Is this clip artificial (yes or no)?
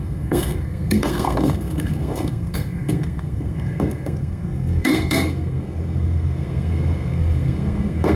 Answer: yes